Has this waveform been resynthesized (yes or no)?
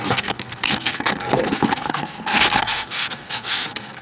yes